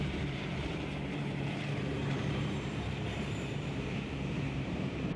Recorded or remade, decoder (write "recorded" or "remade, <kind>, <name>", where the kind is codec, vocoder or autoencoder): remade, vocoder, BigVGAN v2